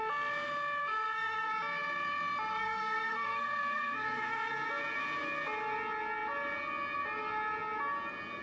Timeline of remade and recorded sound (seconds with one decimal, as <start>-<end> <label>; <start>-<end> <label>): 0.0-0.8 recorded; 0.8-1.5 remade; 1.5-2.5 recorded; 2.5-4.5 remade; 4.5-8.4 recorded